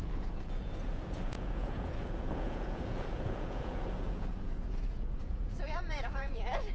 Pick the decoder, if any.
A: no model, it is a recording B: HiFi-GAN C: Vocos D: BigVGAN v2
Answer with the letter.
C